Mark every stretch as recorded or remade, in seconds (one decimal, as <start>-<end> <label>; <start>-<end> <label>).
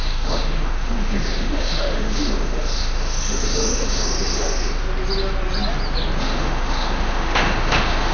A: 0.0-4.8 remade; 4.8-6.2 recorded; 6.2-8.1 remade